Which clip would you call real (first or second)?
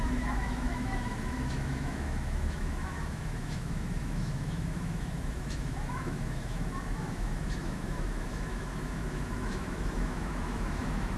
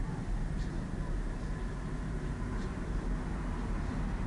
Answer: second